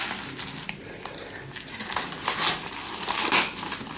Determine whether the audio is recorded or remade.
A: recorded